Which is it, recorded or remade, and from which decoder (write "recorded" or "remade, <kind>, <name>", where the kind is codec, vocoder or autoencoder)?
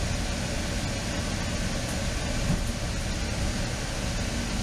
recorded